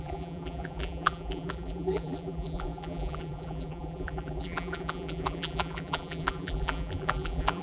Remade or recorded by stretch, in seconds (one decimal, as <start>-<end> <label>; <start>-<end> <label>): 0.0-7.6 remade